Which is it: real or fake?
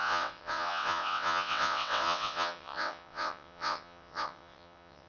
fake